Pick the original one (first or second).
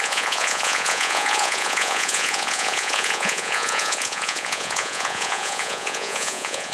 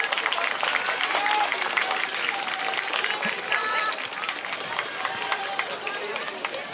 second